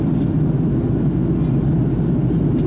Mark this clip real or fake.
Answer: real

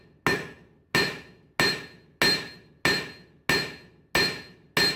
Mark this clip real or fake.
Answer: real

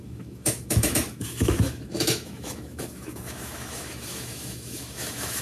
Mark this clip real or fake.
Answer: fake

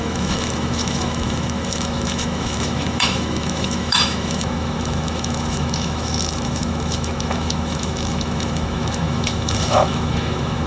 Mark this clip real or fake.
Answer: fake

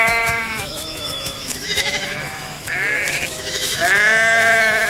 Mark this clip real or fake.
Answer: fake